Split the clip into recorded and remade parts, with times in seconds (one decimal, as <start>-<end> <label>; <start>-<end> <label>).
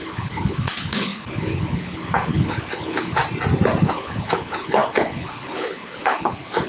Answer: 0.0-3.2 remade; 3.2-3.8 recorded; 3.8-6.7 remade